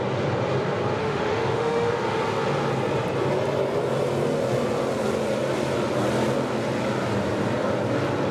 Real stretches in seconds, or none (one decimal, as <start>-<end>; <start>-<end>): 0.0-1.0; 1.9-8.3